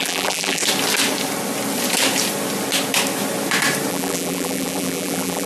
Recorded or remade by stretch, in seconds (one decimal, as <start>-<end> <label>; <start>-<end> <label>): 0.0-0.6 remade; 0.6-3.9 recorded; 3.9-5.5 remade